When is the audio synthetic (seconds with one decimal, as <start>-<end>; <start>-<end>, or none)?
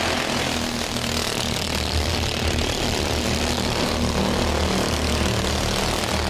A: none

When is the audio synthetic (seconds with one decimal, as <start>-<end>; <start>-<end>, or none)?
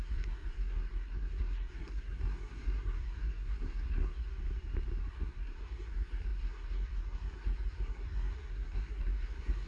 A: 0.0-4.3; 5.1-9.7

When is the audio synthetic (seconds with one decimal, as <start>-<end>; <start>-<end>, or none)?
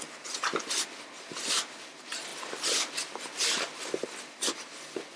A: none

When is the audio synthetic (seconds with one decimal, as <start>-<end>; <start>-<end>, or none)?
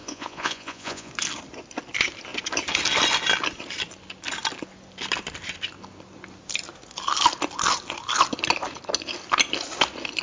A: 0.0-1.1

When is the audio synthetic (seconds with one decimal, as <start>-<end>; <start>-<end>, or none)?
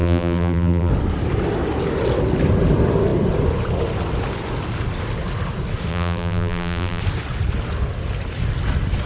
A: 0.0-0.9; 5.9-7.0